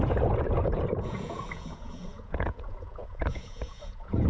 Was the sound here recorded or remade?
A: remade